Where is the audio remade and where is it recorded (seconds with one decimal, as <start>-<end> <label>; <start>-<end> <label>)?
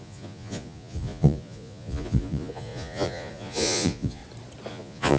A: 0.0-4.2 remade; 4.2-4.7 recorded; 4.7-5.2 remade